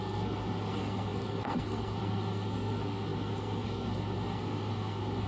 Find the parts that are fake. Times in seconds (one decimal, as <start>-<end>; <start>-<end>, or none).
0.0-5.3